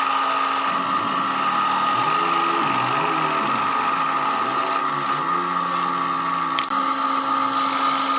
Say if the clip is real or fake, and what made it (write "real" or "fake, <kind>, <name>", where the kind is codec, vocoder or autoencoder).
real